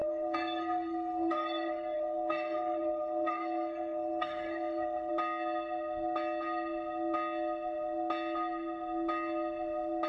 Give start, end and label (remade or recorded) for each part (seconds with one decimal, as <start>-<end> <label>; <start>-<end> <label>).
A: 0.0-5.1 remade; 5.1-10.1 recorded